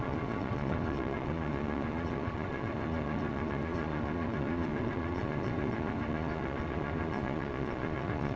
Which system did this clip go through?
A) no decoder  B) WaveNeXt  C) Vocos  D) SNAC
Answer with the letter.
C